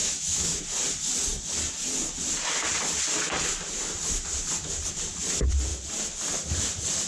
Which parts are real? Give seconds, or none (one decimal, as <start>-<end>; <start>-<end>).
0.6-7.1